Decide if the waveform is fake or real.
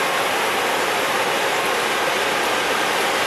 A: real